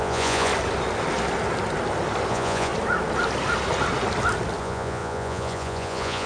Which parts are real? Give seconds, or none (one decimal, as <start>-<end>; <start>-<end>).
0.5-2.3; 2.7-4.6